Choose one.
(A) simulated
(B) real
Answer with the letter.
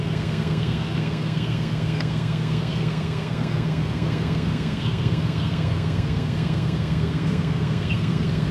A